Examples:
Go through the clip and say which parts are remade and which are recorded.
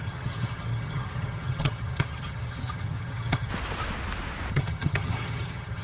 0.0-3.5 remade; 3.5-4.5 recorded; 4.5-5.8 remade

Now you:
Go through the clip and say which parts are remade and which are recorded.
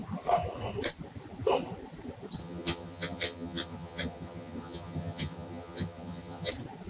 0.0-2.4 recorded; 2.4-6.5 remade; 6.5-6.9 recorded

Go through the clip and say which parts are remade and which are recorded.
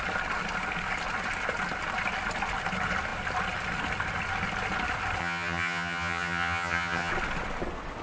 0.0-5.2 recorded; 5.2-7.1 remade; 7.1-8.0 recorded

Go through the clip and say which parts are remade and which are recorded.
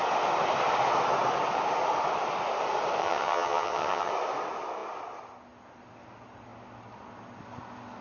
0.0-3.0 recorded; 3.0-4.1 remade; 4.1-8.0 recorded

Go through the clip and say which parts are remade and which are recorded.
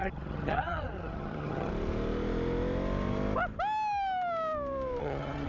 0.0-1.7 remade; 1.7-5.0 recorded; 5.0-5.5 remade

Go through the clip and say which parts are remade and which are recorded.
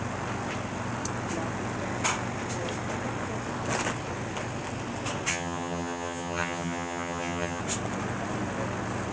0.0-5.3 recorded; 5.3-7.6 remade; 7.6-9.1 recorded